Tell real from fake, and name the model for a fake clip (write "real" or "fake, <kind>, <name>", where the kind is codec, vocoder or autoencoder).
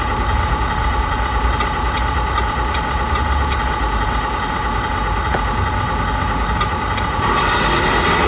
real